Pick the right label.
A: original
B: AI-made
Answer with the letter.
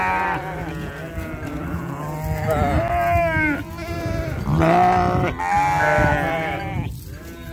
A